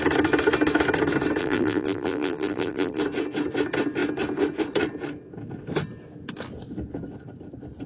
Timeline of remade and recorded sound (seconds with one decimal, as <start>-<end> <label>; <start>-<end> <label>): 0.0-1.4 recorded; 1.4-3.0 remade; 3.0-7.9 recorded